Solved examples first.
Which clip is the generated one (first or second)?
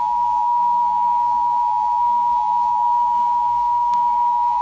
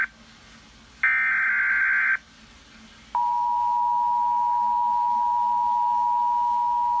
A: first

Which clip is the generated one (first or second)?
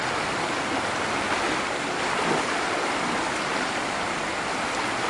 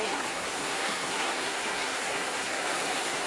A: second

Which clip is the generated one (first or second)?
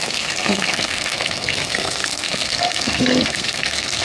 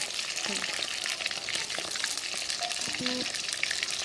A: first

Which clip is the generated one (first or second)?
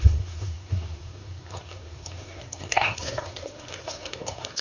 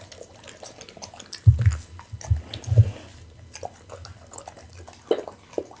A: first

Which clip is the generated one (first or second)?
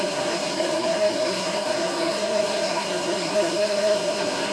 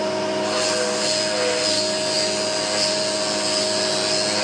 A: first